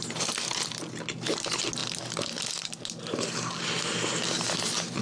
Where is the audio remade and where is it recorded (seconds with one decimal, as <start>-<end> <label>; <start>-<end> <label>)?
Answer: 0.0-5.0 recorded